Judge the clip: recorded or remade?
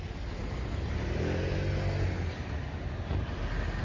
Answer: recorded